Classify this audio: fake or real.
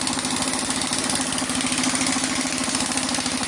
real